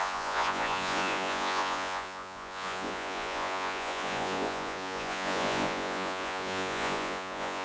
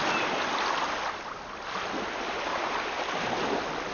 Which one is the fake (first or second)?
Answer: first